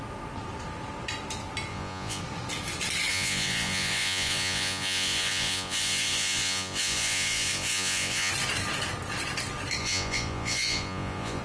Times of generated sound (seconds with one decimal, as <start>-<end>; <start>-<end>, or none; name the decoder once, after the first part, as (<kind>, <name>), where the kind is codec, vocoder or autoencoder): 1.7-2.2 (vocoder, Vocos); 3.1-8.3; 9.8-11.4